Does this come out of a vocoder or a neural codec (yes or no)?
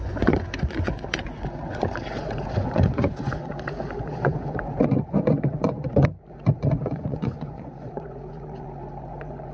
yes